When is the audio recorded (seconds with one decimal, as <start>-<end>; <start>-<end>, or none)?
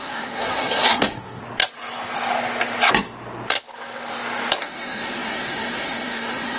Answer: 1.4-4.6